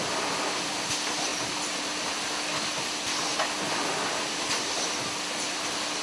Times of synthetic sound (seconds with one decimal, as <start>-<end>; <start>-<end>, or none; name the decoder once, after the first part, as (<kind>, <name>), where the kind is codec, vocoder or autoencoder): none